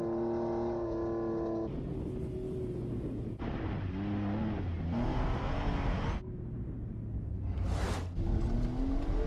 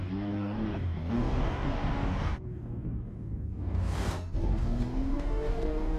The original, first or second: first